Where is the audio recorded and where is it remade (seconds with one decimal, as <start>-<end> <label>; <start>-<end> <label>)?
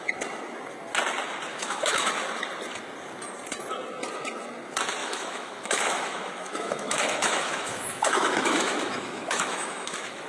0.0-1.5 recorded; 1.5-2.1 remade; 2.1-5.0 recorded; 5.0-10.3 remade